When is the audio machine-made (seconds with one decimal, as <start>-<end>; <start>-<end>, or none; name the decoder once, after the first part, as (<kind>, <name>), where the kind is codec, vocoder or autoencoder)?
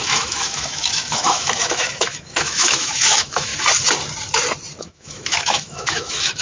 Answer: 0.0-3.5 (autoencoder, DAC-VAE); 4.8-6.4